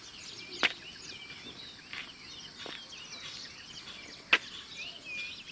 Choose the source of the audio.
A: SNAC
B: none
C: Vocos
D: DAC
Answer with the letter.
B